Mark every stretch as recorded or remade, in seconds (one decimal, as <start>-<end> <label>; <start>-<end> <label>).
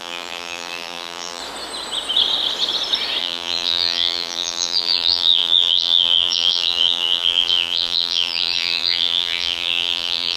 0.0-1.4 remade; 1.4-3.2 recorded; 3.2-10.4 remade